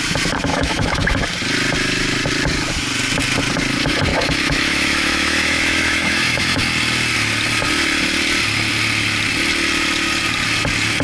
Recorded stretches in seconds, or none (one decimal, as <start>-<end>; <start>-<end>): 0.0-0.5; 1.1-4.1; 6.6-11.0